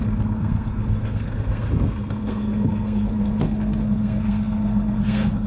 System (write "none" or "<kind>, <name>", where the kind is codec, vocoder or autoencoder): codec, SNAC